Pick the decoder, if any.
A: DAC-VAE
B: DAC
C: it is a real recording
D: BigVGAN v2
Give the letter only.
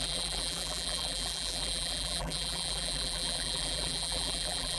D